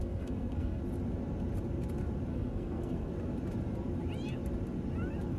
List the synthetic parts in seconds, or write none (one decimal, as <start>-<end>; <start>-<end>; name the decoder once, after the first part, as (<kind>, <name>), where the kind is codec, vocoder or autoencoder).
0.0-0.8 (codec, SNAC); 2.3-3.1